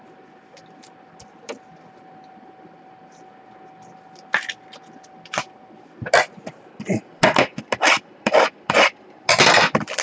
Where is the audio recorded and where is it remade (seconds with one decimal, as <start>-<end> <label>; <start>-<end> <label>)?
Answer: 0.0-10.0 recorded